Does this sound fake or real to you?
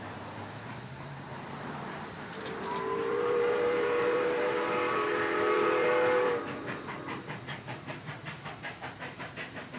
fake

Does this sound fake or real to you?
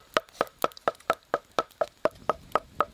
real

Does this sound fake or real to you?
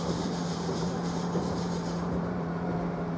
fake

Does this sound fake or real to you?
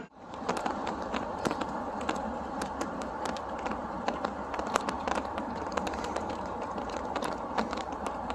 fake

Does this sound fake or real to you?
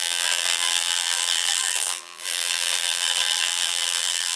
fake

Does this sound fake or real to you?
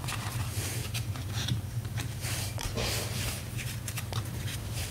fake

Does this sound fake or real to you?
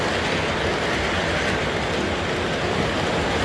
real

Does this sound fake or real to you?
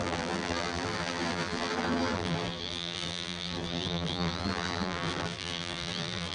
fake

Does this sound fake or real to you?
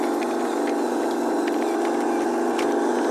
real